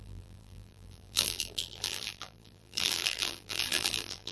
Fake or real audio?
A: fake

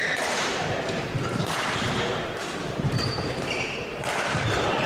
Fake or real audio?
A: fake